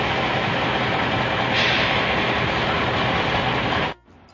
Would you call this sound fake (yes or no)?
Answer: no